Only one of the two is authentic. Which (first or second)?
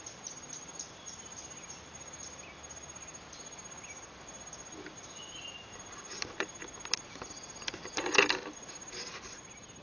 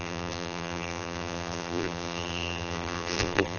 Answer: first